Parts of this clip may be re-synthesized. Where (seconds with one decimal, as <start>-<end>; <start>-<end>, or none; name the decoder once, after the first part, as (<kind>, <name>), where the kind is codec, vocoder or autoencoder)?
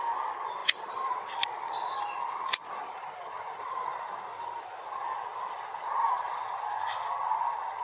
0.6-1.2 (vocoder, BigVGAN v2)